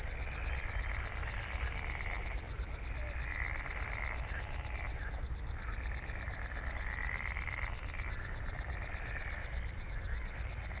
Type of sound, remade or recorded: recorded